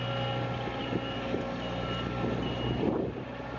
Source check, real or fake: real